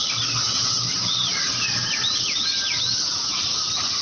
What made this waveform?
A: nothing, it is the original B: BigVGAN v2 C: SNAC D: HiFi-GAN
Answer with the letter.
A